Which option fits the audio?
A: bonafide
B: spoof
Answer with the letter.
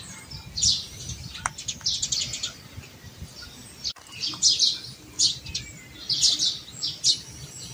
A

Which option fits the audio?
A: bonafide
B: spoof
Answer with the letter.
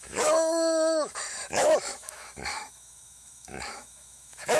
B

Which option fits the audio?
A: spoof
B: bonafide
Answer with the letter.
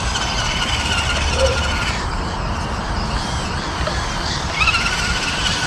B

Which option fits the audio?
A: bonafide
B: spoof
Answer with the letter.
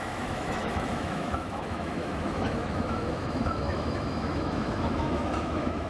B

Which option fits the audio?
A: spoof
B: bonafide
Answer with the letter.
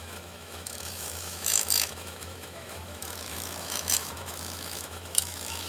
A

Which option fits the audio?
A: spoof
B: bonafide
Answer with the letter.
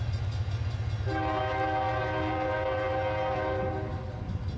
B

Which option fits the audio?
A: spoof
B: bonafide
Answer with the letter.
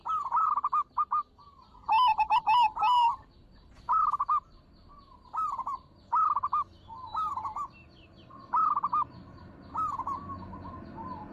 B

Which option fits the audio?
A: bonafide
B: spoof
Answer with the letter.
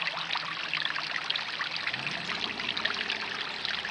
A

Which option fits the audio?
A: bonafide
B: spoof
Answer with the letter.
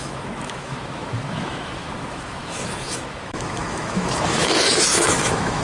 B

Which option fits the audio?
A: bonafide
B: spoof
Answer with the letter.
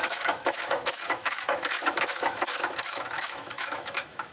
B